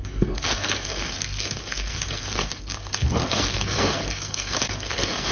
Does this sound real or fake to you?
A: fake